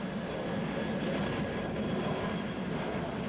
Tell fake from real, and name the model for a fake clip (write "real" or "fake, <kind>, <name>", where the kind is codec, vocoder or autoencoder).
real